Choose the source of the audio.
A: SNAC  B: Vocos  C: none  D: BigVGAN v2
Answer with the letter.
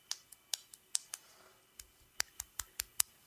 C